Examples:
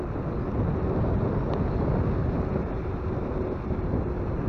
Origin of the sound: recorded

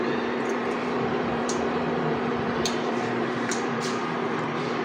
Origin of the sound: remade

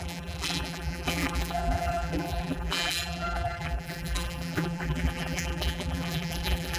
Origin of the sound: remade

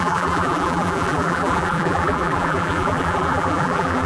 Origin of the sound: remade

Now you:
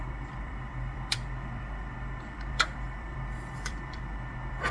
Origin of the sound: remade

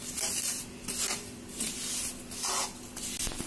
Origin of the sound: recorded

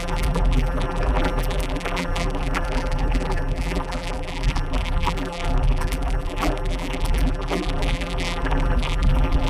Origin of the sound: remade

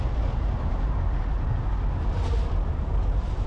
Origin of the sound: recorded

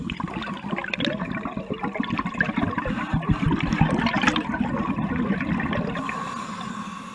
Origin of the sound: recorded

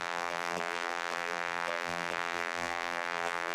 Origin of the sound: remade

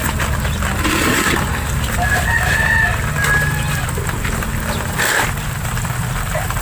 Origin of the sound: recorded